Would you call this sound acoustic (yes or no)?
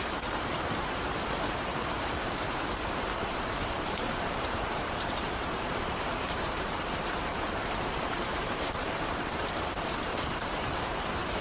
no